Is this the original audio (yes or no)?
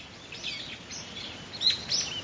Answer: yes